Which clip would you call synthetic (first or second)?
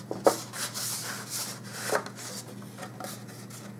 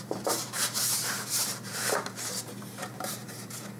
second